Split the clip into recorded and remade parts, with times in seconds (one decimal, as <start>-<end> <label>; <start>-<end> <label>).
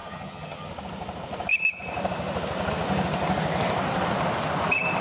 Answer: 0.0-0.7 remade; 0.7-5.0 recorded